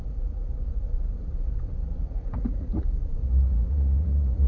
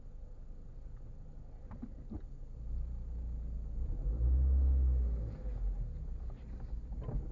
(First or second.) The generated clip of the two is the first